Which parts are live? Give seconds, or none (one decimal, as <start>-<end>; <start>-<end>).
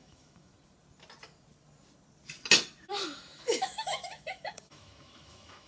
0.5-2.8